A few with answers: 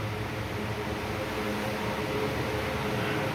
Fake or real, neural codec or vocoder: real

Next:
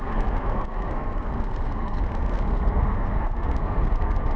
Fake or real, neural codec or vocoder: fake, codec, SNAC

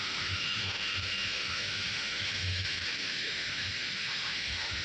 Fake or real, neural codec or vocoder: fake, autoencoder, DAC-VAE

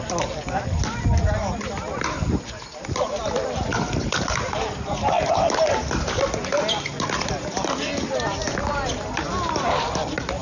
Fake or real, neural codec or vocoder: real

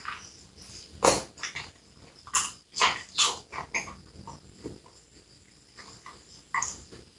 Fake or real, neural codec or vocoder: real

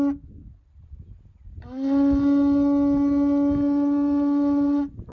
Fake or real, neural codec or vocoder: real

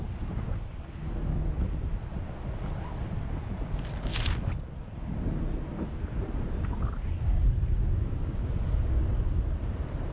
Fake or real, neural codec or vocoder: real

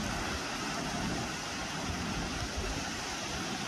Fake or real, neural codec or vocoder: real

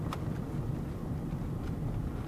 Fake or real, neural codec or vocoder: real